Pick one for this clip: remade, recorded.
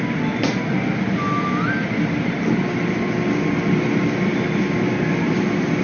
recorded